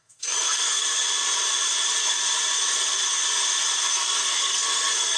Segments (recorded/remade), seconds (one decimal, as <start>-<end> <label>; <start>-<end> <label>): 0.0-0.8 remade; 0.8-3.9 recorded; 3.9-5.2 remade